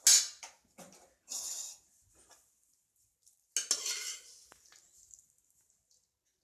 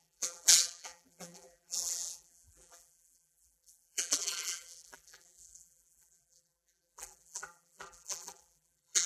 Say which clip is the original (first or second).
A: first